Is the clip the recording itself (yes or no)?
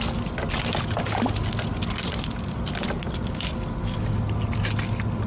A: yes